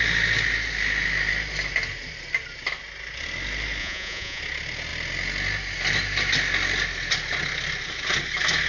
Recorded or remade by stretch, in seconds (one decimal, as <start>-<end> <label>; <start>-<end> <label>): 0.0-3.8 recorded; 3.8-4.4 remade; 4.4-8.7 recorded